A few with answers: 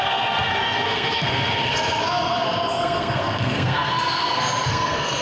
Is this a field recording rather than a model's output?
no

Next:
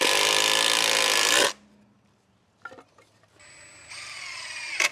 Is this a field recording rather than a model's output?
yes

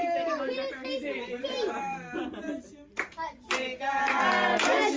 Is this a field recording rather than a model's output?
no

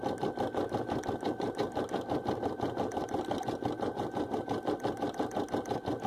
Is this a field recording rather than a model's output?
yes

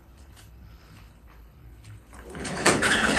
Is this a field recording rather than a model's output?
no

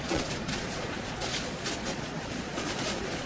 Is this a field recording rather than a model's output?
no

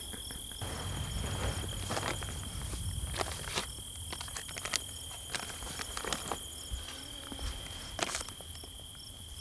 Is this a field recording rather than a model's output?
yes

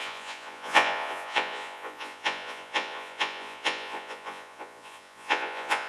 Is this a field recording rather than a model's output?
no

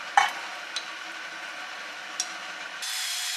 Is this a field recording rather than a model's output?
yes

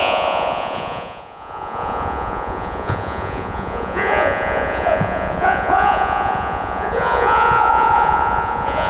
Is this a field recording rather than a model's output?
no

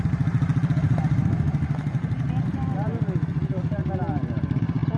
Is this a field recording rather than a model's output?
yes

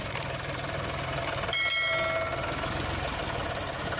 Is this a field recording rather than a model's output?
yes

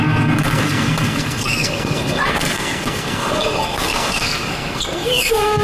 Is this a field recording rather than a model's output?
no